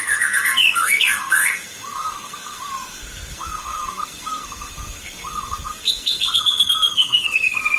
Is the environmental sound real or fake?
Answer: fake